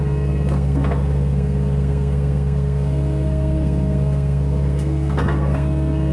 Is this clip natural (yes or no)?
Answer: no